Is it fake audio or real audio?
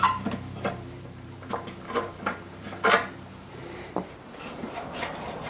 fake